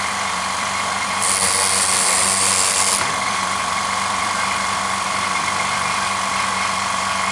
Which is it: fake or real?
fake